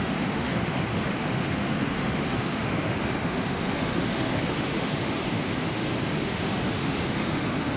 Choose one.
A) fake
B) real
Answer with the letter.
A